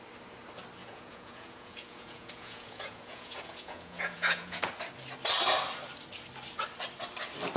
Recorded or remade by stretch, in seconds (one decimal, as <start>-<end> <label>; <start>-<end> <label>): 0.0-0.8 recorded; 0.8-4.7 remade; 4.7-7.6 recorded